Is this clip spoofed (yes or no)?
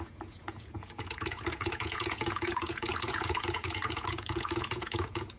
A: yes